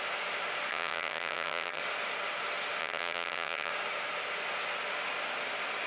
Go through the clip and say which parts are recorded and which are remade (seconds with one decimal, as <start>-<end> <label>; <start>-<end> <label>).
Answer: 0.0-0.7 recorded; 0.7-1.8 remade; 1.8-2.8 recorded; 2.8-3.7 remade; 3.7-5.9 recorded